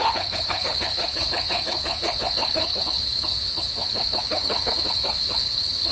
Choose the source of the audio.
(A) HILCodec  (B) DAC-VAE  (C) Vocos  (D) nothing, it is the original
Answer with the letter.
A